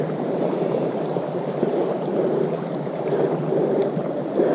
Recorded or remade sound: remade